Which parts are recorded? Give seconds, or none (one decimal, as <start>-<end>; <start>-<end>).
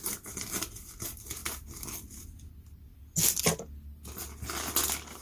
0.0-5.2